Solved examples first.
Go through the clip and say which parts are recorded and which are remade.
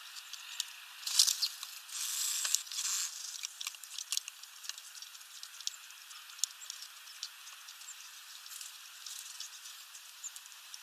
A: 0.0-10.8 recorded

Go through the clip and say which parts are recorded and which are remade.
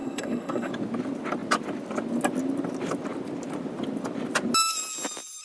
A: 0.0-0.7 remade; 0.7-5.4 recorded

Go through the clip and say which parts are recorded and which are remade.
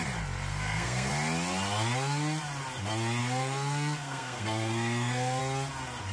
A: 0.0-0.5 recorded; 0.5-1.1 remade; 1.1-3.2 recorded; 3.2-5.4 remade; 5.4-6.1 recorded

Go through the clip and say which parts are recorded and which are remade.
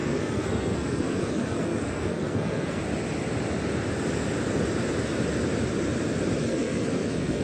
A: 0.0-2.8 remade; 2.8-6.4 recorded; 6.4-7.4 remade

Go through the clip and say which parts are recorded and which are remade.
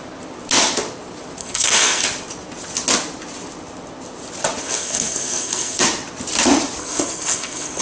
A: 0.0-1.4 recorded; 1.4-2.0 remade; 2.0-4.6 recorded; 4.6-5.8 remade; 5.8-6.8 recorded; 6.8-7.8 remade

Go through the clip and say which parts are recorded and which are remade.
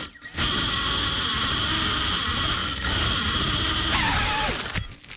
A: 0.0-5.2 recorded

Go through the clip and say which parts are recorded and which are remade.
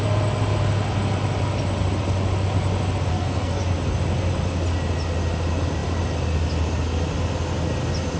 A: 0.0-3.1 recorded; 3.1-3.6 remade; 3.6-8.2 recorded